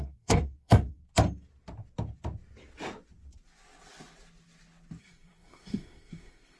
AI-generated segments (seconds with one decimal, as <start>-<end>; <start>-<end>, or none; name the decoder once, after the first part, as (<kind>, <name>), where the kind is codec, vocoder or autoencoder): 0.0-1.0 (codec, SNAC); 5.0-6.6